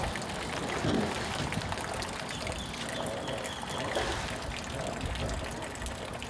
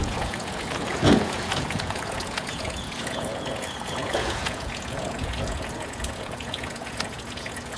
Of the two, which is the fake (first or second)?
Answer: second